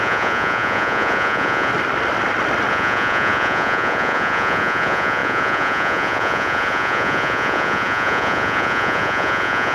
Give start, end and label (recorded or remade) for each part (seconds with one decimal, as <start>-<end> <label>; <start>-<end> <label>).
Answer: 0.0-1.7 remade; 1.7-2.7 recorded; 2.7-9.7 remade